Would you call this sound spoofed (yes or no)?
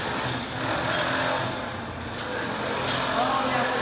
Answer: no